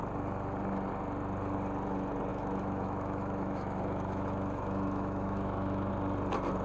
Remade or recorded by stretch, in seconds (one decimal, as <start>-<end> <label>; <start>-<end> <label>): 0.0-2.3 recorded; 2.3-5.9 remade; 5.9-6.6 recorded